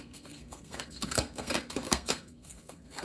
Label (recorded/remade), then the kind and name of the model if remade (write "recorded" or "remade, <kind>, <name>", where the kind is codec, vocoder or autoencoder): remade, codec, SNAC